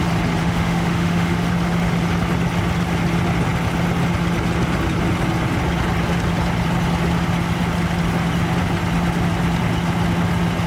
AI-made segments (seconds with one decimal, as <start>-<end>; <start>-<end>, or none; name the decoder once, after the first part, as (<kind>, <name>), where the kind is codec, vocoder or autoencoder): 0.4-1.5 (autoencoder, DAC-VAE)